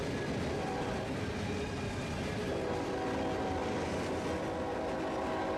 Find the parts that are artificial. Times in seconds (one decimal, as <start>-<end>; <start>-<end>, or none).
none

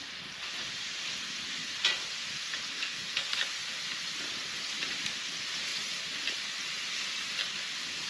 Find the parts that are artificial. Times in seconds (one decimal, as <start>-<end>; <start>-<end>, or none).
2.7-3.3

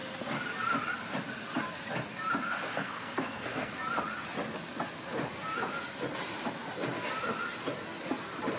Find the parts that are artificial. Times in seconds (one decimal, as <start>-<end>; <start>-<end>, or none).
2.7-3.7

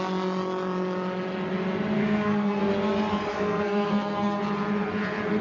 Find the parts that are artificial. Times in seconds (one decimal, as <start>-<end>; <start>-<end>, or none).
2.0-2.6; 3.3-4.4

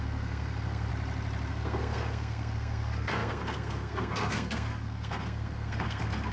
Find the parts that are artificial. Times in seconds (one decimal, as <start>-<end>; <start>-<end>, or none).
0.0-0.9; 1.5-6.3

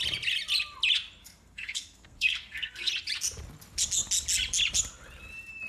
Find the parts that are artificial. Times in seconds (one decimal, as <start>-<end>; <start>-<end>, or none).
1.2-2.9

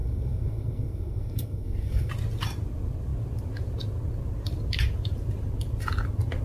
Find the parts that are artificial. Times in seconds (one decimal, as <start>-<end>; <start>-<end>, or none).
0.0-2.1